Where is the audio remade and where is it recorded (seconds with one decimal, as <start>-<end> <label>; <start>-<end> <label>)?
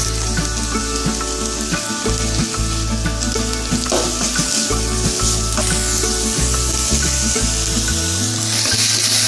0.0-9.3 recorded